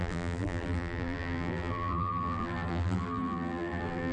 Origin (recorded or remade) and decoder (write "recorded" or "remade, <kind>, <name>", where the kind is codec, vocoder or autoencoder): remade, vocoder, BigVGAN v2